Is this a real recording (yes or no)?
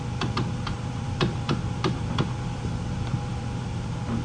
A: no